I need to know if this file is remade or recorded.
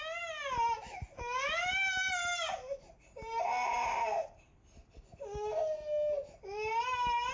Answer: recorded